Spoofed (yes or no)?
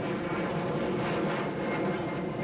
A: no